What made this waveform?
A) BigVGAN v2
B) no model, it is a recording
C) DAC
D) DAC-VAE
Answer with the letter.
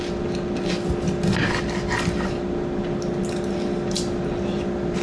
B